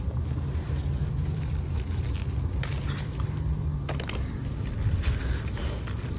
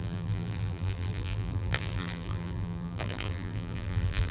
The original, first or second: first